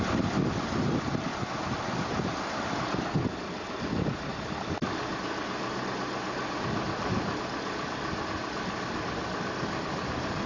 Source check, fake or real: real